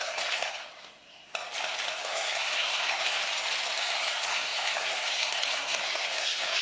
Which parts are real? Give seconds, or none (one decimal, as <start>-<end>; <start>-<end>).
1.3-2.0; 3.2-3.8